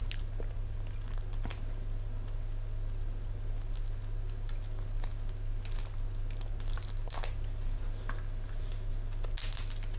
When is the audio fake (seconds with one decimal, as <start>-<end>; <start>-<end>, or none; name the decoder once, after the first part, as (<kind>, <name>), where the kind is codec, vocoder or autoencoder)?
none